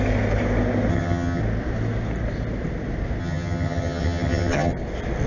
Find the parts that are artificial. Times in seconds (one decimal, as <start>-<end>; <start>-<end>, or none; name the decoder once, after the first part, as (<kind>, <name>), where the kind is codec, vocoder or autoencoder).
0.9-1.4 (vocoder, HiFi-GAN); 3.2-4.7